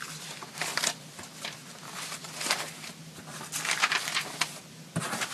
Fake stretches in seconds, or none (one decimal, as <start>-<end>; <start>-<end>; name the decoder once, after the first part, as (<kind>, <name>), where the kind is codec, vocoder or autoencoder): none